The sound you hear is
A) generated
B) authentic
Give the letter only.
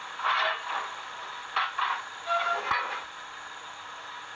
B